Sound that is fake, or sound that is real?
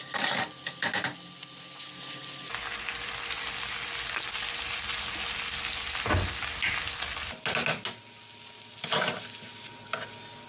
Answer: real